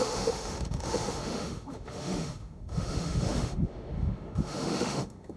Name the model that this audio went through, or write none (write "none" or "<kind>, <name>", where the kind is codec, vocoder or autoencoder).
autoencoder, DAC-VAE